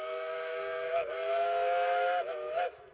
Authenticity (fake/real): fake